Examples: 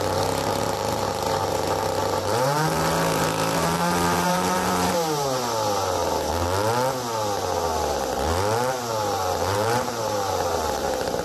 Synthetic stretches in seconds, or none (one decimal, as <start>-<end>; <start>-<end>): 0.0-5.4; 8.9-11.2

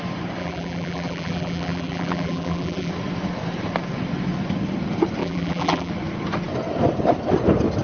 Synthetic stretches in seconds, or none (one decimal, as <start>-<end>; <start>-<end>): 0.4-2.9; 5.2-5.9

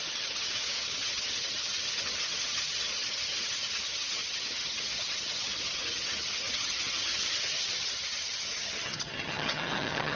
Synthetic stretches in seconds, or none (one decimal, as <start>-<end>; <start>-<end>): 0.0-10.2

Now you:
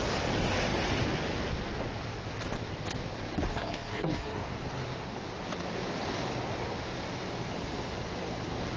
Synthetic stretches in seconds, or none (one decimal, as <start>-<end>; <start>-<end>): 3.5-4.4